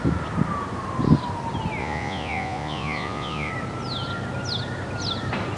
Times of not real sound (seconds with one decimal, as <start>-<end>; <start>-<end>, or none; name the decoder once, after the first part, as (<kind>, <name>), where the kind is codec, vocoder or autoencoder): 1.8-3.5 (vocoder, Vocos)

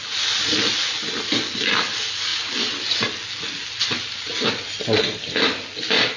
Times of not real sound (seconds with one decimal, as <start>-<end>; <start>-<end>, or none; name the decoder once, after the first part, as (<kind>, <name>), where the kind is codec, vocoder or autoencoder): none

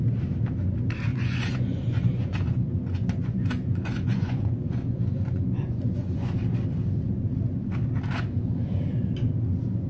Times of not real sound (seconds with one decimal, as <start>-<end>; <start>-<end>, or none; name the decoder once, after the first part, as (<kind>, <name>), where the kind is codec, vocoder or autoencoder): 1.1-6.3 (vocoder, Vocos)

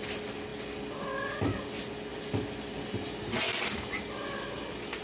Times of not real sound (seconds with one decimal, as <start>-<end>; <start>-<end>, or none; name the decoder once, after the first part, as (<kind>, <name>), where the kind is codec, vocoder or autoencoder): none

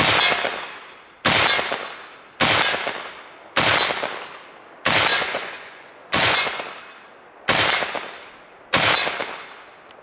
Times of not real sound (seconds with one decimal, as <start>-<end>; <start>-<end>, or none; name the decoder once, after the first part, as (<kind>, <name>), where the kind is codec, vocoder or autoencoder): 5.1-6.6 (vocoder, Vocos)

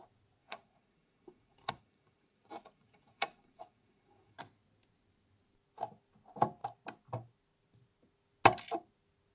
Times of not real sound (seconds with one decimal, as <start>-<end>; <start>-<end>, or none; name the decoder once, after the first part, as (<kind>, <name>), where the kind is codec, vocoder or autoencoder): 0.4-4.4 (vocoder, Vocos)